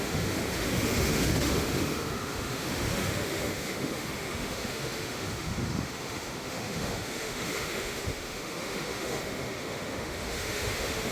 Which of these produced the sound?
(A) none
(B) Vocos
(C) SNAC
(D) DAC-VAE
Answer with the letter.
D